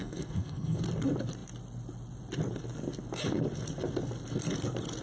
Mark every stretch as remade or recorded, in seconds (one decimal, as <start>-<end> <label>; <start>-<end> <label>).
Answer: 0.0-0.8 remade; 0.8-5.0 recorded